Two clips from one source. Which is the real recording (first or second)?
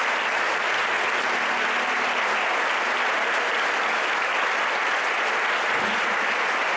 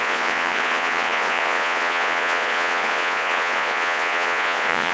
first